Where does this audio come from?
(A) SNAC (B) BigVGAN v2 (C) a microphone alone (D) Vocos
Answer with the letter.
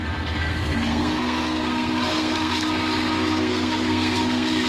A